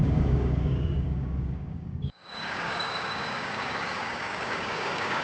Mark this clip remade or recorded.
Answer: remade